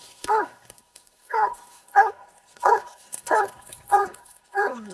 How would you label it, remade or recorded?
remade